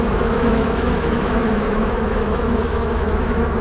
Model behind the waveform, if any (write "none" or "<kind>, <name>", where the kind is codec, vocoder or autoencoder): autoencoder, DAC-VAE